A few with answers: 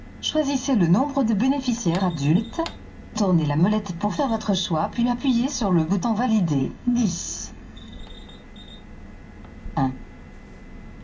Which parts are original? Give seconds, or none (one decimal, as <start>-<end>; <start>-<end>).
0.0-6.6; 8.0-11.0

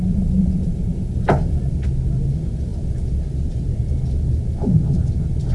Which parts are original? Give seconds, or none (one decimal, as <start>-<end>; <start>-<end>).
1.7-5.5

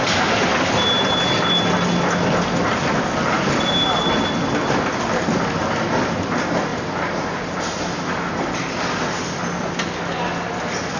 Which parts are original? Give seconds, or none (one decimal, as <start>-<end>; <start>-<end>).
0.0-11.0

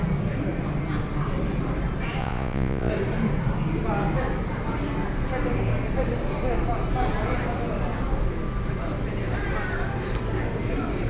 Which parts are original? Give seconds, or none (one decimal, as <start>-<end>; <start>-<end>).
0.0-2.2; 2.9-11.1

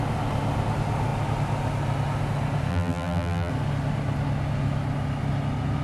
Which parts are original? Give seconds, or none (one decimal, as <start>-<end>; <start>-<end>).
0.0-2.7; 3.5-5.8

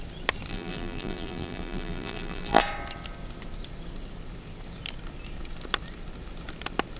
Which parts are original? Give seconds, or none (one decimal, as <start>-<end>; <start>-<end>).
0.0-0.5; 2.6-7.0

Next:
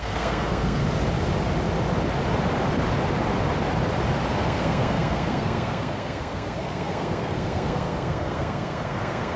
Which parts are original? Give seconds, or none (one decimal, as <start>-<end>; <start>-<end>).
0.8-4.3

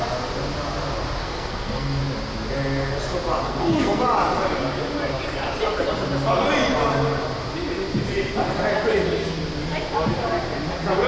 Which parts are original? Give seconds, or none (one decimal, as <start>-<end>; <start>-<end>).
0.0-1.2; 2.0-3.4; 4.0-11.1